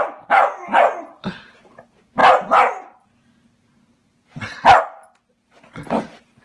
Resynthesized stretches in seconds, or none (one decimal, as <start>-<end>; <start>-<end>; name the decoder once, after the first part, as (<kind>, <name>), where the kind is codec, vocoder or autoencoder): none